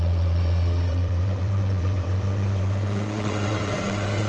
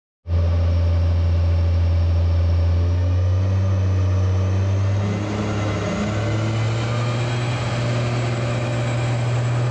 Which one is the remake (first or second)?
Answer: first